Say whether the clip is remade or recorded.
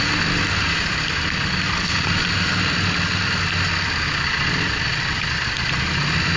recorded